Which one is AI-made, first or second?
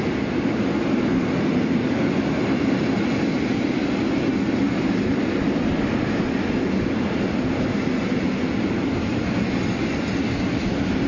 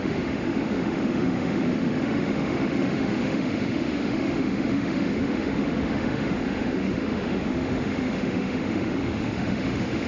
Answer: second